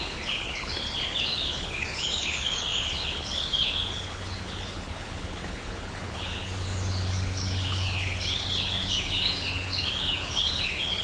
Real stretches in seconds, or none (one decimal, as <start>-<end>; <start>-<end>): none